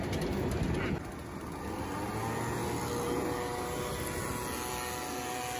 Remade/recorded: recorded